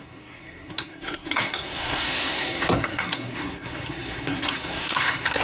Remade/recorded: remade